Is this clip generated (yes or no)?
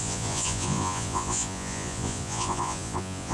yes